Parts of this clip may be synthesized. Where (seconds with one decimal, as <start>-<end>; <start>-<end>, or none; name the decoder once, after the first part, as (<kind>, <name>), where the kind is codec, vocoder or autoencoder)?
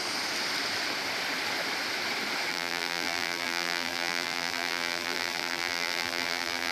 2.5-6.7 (vocoder, BigVGAN v2)